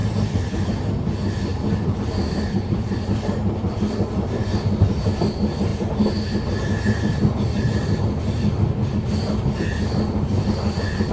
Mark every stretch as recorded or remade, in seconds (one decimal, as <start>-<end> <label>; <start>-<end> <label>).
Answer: 0.0-11.1 recorded